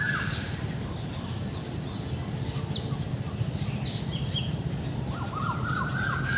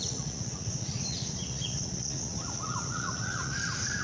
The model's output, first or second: second